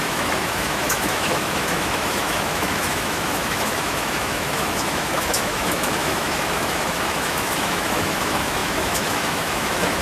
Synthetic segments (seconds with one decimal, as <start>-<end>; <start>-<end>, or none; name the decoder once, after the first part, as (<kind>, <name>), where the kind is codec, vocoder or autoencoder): 0.0-10.0 (autoencoder, DAC-VAE)